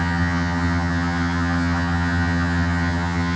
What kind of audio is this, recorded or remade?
remade